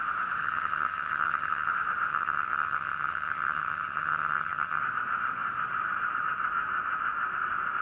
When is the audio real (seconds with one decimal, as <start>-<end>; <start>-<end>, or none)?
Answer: 0.0-0.4; 1.7-2.1; 4.8-7.8